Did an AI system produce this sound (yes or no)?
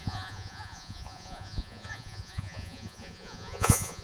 yes